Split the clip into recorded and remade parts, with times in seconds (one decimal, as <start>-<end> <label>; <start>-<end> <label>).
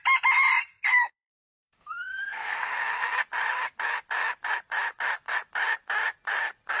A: 0.0-0.9 recorded; 0.9-2.7 remade; 2.7-6.8 recorded